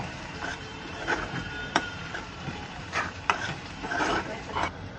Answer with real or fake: fake